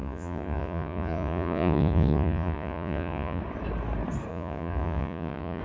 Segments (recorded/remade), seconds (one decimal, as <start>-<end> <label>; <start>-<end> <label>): 0.0-3.4 remade; 3.4-4.3 recorded; 4.3-5.6 remade